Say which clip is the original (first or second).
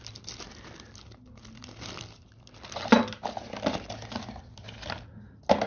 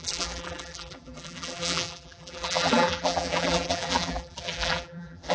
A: first